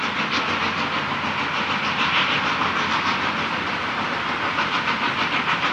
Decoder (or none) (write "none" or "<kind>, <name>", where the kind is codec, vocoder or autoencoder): none